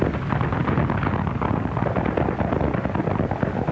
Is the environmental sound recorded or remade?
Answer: recorded